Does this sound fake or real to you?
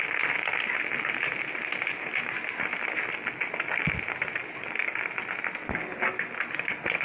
real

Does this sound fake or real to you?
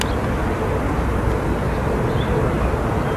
real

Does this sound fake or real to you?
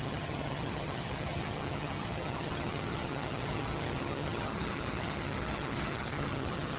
fake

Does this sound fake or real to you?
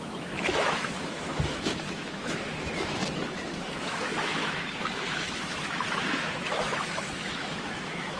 fake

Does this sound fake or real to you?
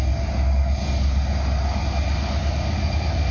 real